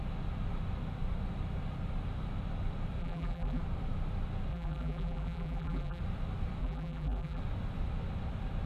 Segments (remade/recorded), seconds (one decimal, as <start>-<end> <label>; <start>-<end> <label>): 0.0-3.0 recorded; 3.0-3.6 remade; 3.6-4.5 recorded; 4.5-6.0 remade; 6.0-6.6 recorded; 6.6-7.4 remade; 7.4-8.7 recorded